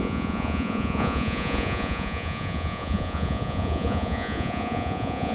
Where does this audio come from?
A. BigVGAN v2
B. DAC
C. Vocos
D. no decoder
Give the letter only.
C